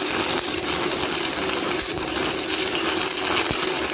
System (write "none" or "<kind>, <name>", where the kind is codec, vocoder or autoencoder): none